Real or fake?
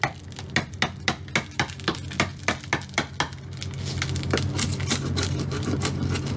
real